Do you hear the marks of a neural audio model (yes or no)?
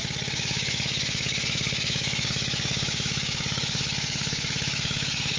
yes